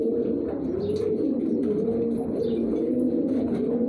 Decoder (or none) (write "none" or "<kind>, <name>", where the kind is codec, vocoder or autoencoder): none